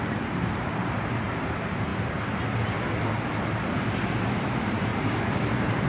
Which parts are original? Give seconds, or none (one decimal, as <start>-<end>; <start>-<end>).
1.9-4.1